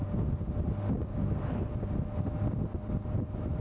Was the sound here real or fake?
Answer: real